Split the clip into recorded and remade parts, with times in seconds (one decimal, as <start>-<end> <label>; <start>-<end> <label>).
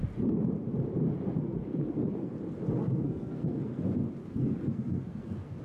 0.0-1.4 recorded; 1.4-2.3 remade; 2.3-2.8 recorded; 2.8-3.8 remade; 3.8-4.2 recorded; 4.2-5.6 remade